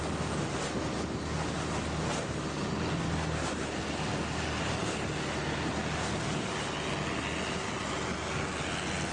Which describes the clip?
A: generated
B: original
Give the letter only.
B